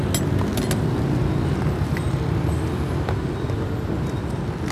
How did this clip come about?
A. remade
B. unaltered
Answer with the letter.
B